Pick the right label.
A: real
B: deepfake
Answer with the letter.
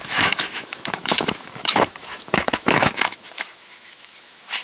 B